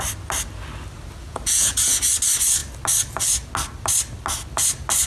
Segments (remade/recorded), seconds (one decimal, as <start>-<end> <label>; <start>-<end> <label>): 0.0-1.2 recorded; 1.2-2.0 remade; 2.0-5.1 recorded